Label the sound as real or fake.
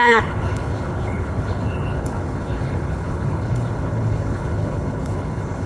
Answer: fake